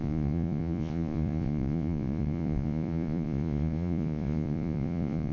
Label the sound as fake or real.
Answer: fake